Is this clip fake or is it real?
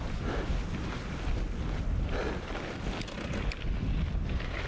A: real